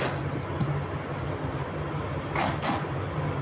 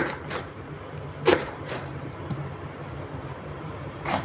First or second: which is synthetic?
second